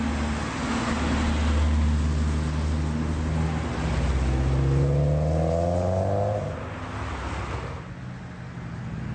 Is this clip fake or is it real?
real